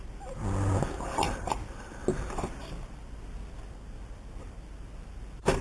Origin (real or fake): real